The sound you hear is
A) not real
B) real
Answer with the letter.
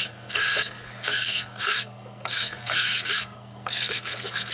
A